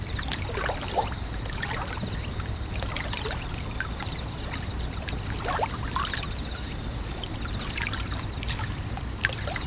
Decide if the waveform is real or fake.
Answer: fake